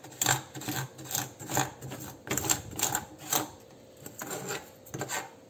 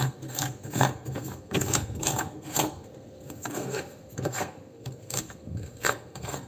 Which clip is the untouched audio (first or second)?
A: first